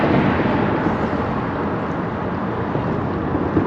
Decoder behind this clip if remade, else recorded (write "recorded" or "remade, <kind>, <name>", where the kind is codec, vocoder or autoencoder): recorded